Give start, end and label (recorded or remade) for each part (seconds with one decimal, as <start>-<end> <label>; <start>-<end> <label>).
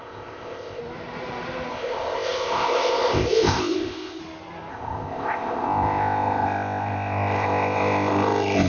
0.0-0.8 remade; 0.8-1.7 recorded; 1.7-4.2 remade; 4.2-4.7 recorded; 4.7-8.7 remade